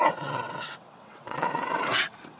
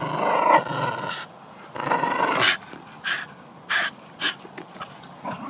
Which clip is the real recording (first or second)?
second